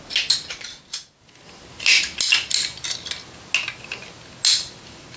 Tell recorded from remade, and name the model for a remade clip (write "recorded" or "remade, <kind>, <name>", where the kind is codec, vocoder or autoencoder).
recorded